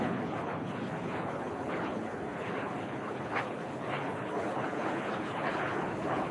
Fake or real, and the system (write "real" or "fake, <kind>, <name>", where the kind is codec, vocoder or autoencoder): fake, codec, HILCodec